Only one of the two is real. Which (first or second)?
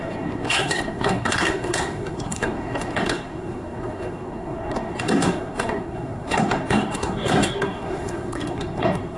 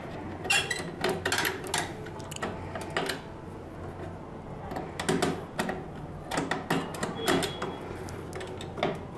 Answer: second